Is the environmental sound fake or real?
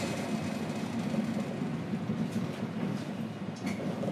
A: real